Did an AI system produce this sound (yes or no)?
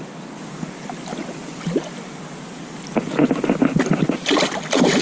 no